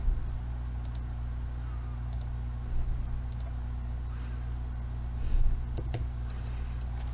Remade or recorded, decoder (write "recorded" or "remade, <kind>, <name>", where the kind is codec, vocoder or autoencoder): recorded